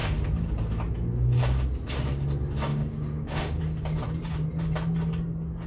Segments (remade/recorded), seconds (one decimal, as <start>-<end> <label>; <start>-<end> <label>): 0.0-2.7 recorded; 2.7-3.6 remade; 3.6-5.7 recorded